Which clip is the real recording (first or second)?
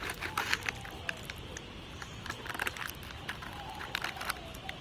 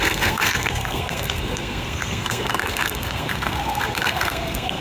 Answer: first